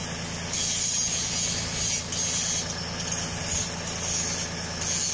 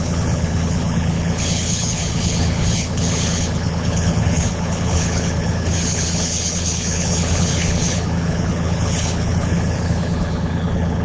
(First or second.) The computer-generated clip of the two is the second